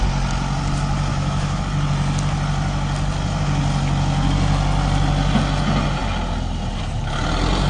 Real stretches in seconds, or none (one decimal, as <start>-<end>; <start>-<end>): 0.0-1.1; 1.6-7.7